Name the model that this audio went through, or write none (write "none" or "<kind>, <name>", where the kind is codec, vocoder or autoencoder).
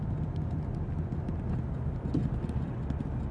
none